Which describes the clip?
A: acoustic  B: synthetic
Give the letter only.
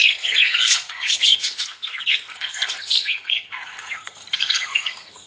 B